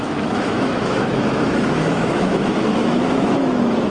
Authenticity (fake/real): fake